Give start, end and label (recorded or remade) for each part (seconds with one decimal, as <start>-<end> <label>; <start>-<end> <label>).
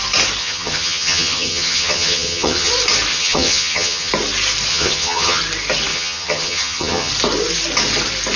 0.0-0.4 recorded; 0.4-2.7 remade; 2.7-3.1 recorded; 3.1-4.1 remade; 4.1-4.7 recorded; 4.7-5.4 remade; 5.4-5.9 recorded; 5.9-7.1 remade; 7.1-8.4 recorded